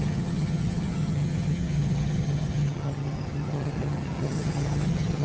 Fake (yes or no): yes